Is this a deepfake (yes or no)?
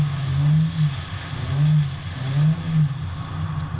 no